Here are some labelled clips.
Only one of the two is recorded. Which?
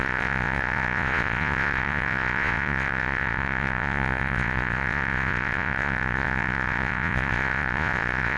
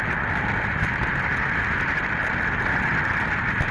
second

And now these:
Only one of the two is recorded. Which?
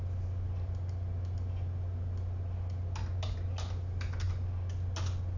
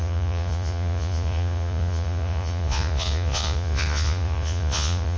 first